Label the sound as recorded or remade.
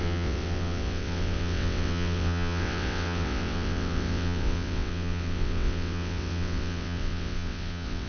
remade